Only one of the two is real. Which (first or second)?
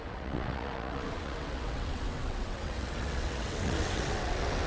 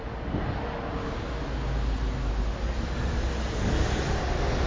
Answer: second